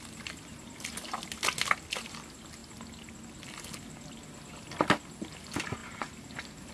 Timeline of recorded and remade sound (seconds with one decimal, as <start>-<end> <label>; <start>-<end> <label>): 0.0-6.7 recorded